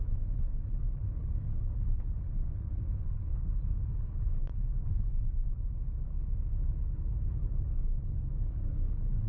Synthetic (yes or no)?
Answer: yes